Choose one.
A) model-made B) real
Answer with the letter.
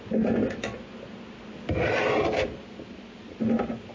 B